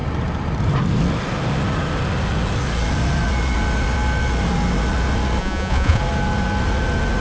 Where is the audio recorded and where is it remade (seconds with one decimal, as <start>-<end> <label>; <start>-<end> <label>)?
0.0-5.4 recorded; 5.4-6.0 remade; 6.0-7.2 recorded